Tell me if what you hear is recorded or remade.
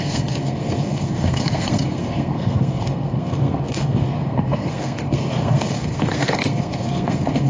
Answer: remade